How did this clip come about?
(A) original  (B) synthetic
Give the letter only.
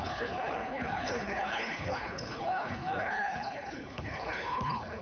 B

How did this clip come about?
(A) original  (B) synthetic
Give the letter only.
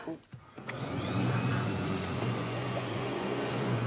B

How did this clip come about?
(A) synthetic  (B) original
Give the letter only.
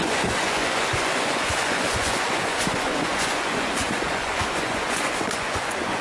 A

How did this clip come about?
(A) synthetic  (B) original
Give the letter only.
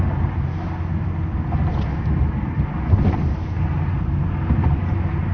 B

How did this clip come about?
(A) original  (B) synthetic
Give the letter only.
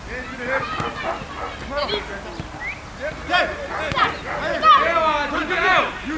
A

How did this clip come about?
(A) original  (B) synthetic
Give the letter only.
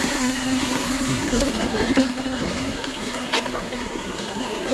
B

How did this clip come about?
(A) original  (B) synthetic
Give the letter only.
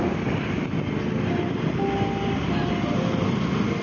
A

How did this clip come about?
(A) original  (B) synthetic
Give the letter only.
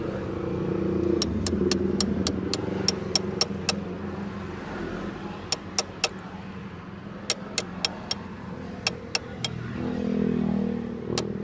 A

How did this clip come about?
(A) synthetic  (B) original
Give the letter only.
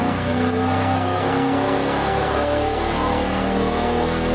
A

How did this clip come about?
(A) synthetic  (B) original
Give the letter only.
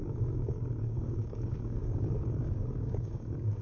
A